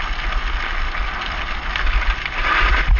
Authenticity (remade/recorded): recorded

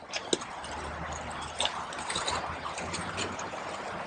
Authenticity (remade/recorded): recorded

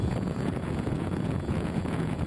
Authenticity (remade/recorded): remade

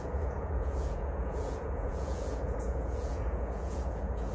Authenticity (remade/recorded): remade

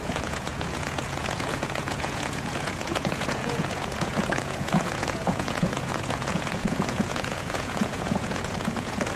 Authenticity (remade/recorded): remade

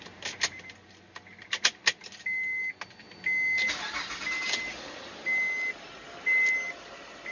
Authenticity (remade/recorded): recorded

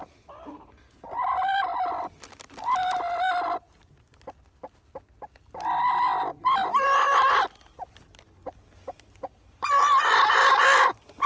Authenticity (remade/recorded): recorded